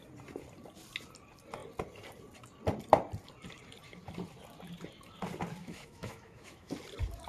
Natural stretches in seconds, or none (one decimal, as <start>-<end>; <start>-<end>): 0.0-5.6; 6.7-7.3